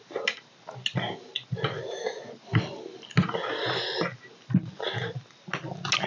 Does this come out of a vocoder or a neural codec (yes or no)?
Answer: no